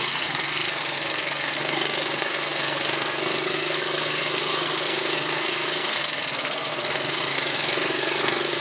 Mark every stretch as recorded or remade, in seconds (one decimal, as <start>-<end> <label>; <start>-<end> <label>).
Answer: 0.0-8.6 remade